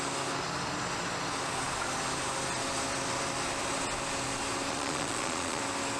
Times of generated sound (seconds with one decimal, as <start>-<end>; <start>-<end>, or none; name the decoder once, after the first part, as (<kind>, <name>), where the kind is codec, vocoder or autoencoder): 4.7-5.6 (vocoder, Vocos)